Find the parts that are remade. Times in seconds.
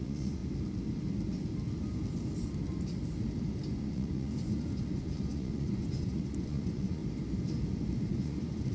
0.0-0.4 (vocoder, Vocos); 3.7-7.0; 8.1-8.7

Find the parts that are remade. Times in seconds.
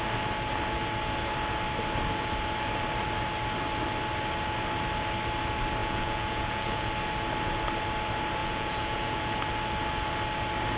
5.8-6.9 (vocoder, Vocos); 8.4-9.2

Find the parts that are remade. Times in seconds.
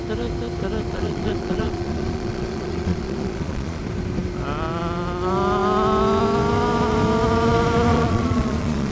0.9-3.8 (vocoder, Vocos); 7.9-8.9